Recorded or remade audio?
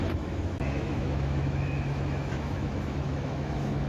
remade